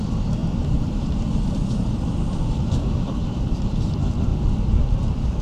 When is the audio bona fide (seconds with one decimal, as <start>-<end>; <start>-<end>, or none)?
4.3-5.0